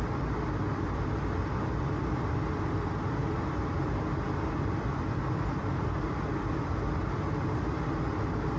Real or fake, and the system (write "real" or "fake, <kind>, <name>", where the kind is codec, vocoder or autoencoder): real